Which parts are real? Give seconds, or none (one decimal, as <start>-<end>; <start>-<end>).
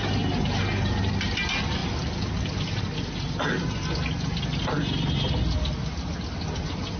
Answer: 0.0-7.0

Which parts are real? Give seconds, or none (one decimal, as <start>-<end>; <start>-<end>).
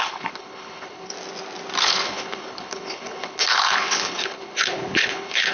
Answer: 1.1-1.8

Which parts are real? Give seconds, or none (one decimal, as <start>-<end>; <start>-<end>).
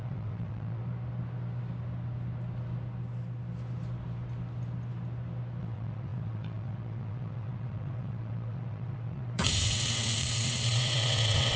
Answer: 0.8-5.6